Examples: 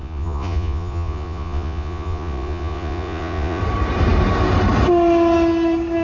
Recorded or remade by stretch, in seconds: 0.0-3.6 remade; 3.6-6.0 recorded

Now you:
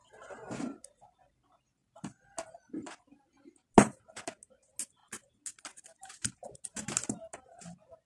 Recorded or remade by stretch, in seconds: 0.0-8.1 recorded